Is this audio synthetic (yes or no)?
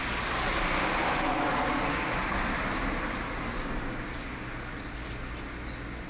no